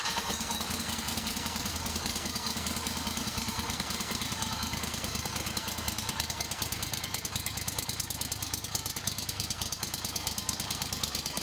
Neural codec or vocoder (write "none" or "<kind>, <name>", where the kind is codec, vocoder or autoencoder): codec, SNAC